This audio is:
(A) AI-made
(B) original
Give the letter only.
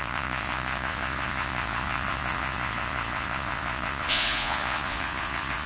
A